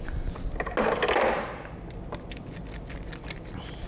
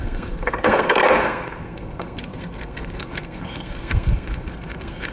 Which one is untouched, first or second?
first